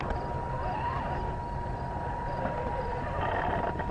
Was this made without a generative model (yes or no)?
yes